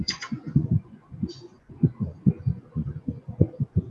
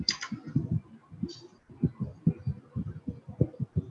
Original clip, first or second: second